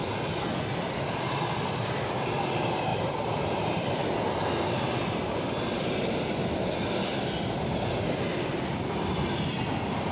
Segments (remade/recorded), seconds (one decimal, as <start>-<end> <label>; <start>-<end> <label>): 0.0-2.9 recorded; 2.9-4.1 remade; 4.1-10.1 recorded